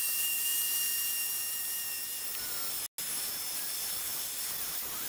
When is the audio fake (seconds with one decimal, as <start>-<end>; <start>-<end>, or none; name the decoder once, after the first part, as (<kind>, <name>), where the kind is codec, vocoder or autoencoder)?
0.0-0.5 (vocoder, BigVGAN v2); 3.6-5.1